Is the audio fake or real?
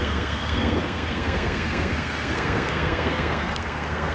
fake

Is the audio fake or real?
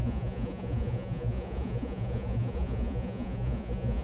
fake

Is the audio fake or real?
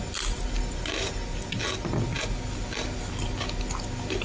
real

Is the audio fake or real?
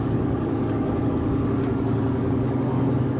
fake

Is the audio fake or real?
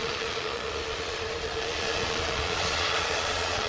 fake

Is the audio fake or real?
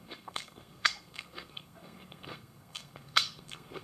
fake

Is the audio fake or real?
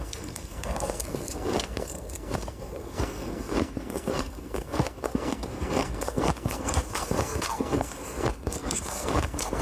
fake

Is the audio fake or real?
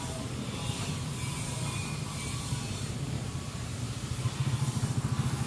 fake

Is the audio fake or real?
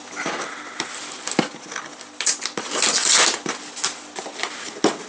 real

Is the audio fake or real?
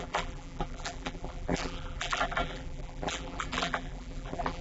fake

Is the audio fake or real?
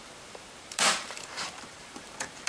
fake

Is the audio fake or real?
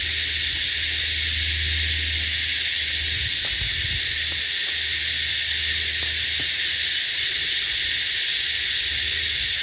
real